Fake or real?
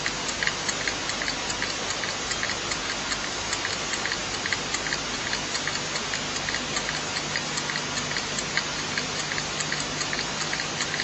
real